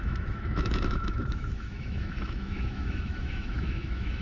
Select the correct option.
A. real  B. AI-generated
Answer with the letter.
B